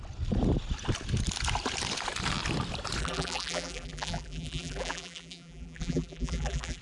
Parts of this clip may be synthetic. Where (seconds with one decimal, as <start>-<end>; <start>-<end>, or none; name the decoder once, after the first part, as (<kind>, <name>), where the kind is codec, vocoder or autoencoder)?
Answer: 3.0-6.8 (vocoder, BigVGAN v2)

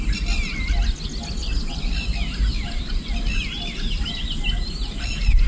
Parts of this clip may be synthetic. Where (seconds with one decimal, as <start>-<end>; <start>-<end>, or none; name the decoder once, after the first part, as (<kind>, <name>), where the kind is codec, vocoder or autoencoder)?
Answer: 1.4-4.2 (vocoder, BigVGAN v2)

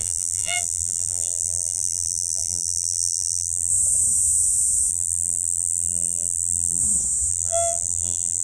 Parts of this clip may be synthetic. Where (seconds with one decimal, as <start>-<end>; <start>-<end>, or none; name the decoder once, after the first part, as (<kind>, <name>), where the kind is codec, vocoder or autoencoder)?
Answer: 0.0-3.7 (vocoder, BigVGAN v2); 4.9-6.8; 7.3-8.4

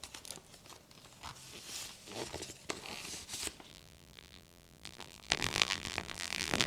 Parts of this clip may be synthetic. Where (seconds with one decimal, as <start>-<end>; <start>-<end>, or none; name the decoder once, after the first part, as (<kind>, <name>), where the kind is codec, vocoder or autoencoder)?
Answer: 3.7-6.7 (vocoder, BigVGAN v2)